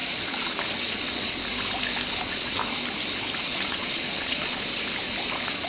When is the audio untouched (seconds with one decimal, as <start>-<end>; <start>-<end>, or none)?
1.4-2.1; 2.6-3.4; 4.7-5.3